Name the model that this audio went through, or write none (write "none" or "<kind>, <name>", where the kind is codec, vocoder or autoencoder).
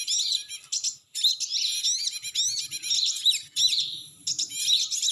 none